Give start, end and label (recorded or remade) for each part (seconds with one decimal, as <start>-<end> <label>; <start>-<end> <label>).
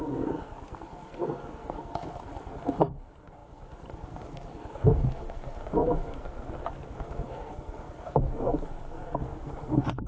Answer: 0.0-10.1 remade